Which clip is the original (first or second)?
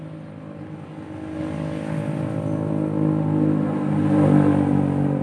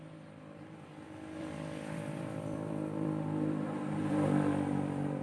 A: first